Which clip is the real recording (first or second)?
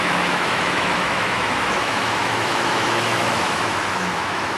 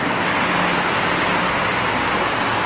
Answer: second